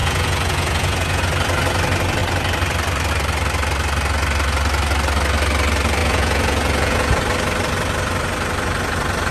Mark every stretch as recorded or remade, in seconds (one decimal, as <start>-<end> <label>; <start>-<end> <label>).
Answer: 0.0-1.2 remade; 1.2-6.0 recorded; 6.0-7.2 remade; 7.2-9.3 recorded